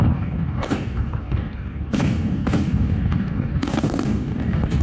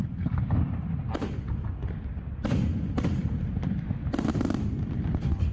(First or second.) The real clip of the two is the second